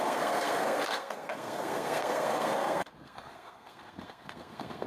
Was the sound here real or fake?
fake